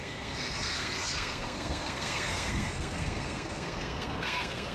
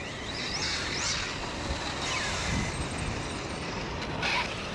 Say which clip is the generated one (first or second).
first